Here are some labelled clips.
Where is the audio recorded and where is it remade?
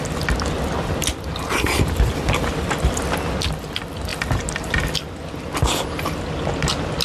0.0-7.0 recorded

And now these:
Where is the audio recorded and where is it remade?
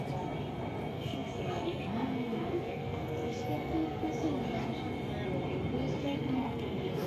0.0-0.9 recorded; 0.9-4.0 remade; 4.0-6.0 recorded; 6.0-7.1 remade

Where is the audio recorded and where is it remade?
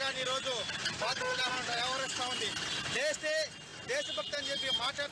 0.0-5.1 recorded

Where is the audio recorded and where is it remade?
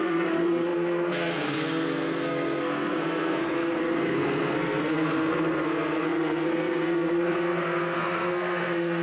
0.0-9.0 remade